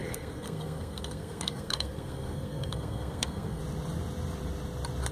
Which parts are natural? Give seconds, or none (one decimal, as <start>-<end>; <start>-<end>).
3.6-5.1